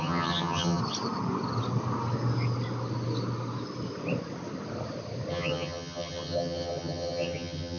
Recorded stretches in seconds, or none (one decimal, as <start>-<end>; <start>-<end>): 0.8-5.3